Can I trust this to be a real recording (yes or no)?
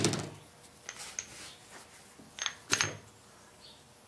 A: yes